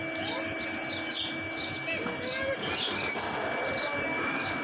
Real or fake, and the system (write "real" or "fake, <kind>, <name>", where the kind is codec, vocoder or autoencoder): real